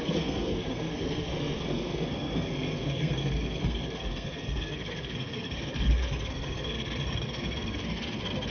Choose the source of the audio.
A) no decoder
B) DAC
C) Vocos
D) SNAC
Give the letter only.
D